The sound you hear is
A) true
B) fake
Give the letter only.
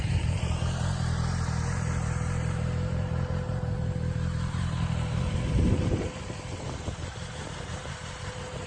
B